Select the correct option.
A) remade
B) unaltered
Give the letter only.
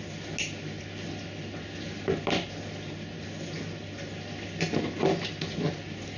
B